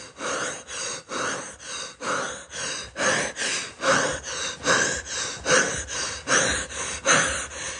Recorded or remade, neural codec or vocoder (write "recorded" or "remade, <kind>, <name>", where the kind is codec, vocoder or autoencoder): recorded